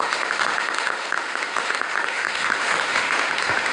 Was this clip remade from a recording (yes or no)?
yes